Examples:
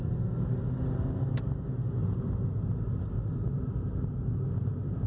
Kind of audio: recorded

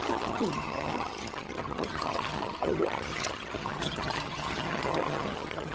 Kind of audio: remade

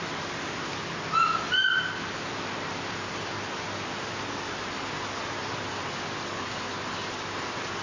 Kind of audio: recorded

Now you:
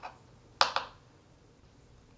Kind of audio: recorded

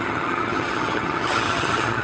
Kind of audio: remade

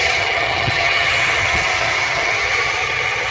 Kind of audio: remade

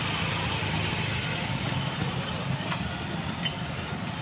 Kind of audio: recorded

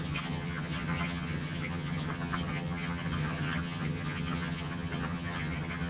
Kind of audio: remade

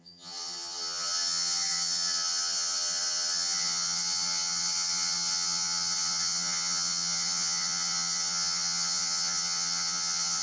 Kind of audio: remade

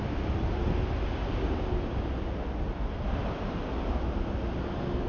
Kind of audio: recorded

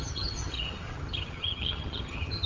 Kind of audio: remade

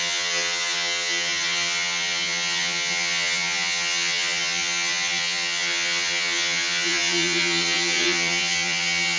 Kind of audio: remade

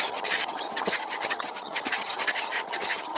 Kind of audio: remade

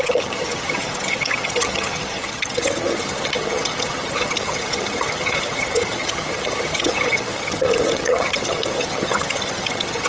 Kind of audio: remade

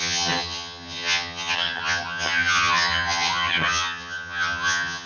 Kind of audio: remade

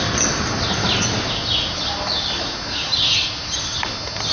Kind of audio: recorded